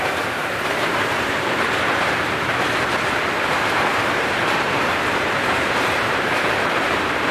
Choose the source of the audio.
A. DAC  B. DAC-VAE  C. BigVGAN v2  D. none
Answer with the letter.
C